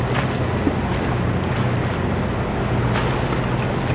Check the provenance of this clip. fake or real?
real